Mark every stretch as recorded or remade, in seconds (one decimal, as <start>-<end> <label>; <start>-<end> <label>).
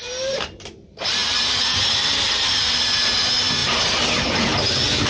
0.0-5.1 remade